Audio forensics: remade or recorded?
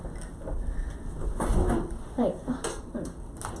recorded